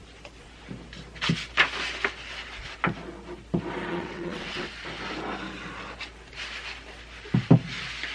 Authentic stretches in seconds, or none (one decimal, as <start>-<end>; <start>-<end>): 0.0-3.9; 4.7-8.1

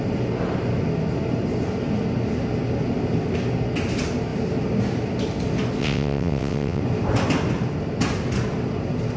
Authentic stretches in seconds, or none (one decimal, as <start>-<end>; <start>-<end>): 0.0-5.8; 6.8-9.2